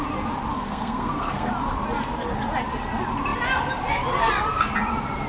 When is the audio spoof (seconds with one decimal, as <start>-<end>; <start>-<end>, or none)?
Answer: 0.5-1.5